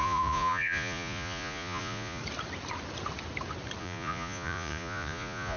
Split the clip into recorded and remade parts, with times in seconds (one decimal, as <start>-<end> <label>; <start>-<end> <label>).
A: 0.0-2.2 remade; 2.2-3.8 recorded; 3.8-5.6 remade